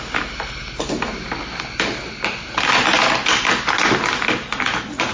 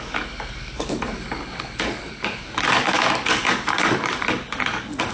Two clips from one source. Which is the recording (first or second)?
first